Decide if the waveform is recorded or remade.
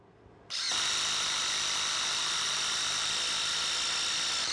recorded